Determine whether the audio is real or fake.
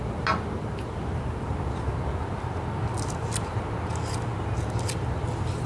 real